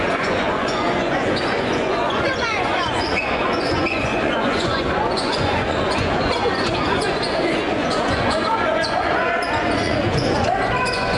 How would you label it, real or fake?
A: fake